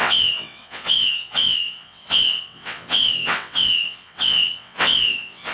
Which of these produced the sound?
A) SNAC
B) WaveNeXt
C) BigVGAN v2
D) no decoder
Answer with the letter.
B